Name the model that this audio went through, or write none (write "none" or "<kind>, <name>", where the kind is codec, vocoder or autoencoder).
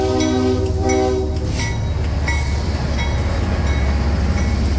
none